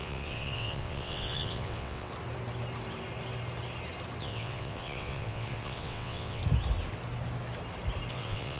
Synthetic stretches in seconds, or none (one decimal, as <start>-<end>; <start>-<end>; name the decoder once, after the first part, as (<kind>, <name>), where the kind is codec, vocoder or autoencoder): 0.0-2.1 (vocoder, WaveNeXt); 4.2-6.4; 8.1-8.6

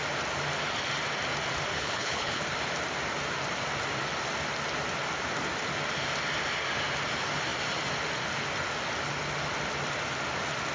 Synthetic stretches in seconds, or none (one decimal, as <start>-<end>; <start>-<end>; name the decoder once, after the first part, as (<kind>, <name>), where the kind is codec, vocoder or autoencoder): 1.7-2.4 (codec, HILCodec)

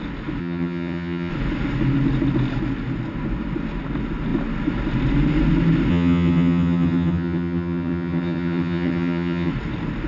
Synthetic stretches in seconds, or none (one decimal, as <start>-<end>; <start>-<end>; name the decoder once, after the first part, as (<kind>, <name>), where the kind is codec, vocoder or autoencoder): 0.4-1.3 (vocoder, HiFi-GAN); 5.9-9.5

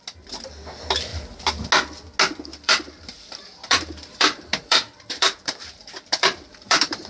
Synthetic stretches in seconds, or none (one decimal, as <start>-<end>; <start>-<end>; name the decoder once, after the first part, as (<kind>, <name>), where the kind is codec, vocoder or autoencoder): 1.1-1.7 (vocoder, BigVGAN v2); 2.5-7.1

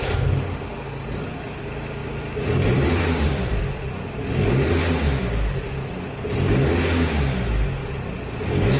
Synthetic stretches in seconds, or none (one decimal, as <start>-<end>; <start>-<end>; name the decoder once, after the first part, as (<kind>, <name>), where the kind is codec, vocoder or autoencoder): 2.0-3.6 (vocoder, BigVGAN v2)

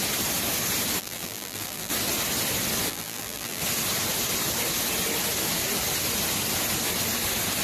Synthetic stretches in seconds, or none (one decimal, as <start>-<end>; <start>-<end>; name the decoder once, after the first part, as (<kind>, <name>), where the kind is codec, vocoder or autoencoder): 1.0-1.9 (vocoder, BigVGAN v2); 2.9-3.6

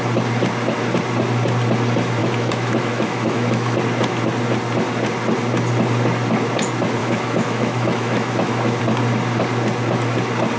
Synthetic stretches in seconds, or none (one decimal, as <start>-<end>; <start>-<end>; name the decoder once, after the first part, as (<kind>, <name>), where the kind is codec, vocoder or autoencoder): 2.2-3.8 (autoencoder, DAC-VAE); 7.0-8.8

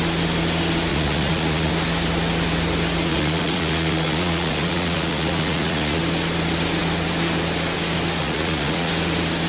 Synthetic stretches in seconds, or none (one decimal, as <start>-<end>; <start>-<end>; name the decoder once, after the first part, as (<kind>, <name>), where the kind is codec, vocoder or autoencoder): 0.9-1.7 (vocoder, Vocos); 3.1-6.0; 8.2-8.9